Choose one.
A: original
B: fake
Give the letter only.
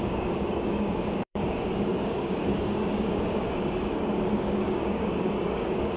B